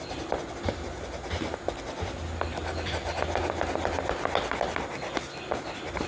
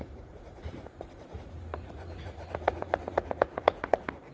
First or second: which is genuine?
first